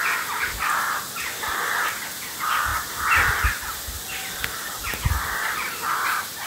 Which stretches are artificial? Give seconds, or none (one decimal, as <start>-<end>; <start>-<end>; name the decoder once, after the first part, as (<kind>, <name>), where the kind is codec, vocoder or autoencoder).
none